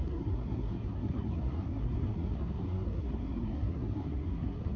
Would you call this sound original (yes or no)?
no